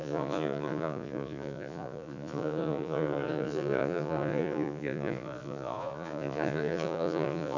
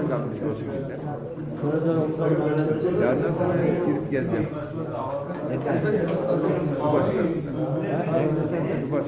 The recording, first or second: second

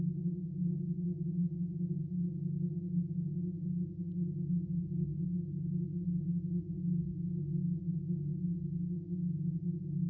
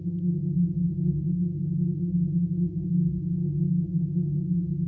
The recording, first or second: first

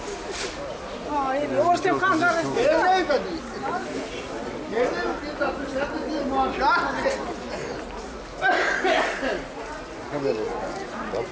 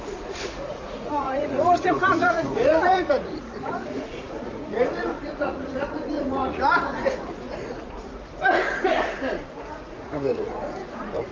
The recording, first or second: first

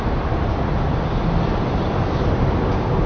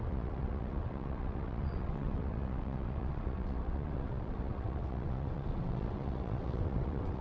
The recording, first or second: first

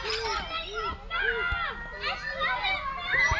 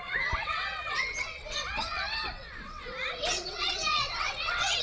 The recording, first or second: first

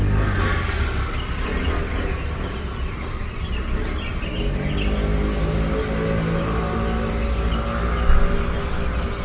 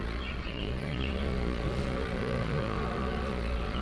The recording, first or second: first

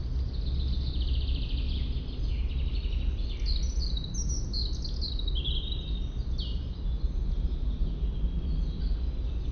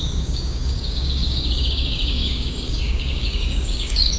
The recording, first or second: first